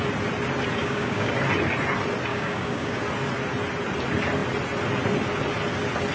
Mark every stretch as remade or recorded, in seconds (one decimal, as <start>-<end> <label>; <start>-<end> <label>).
0.0-0.8 recorded; 0.8-1.3 remade; 1.3-2.3 recorded; 2.3-3.0 remade; 3.0-6.1 recorded